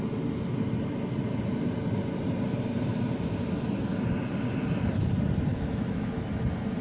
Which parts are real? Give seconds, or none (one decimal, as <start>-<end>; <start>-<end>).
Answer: 0.0-5.5; 6.3-6.8